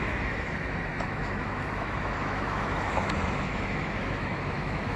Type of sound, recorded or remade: remade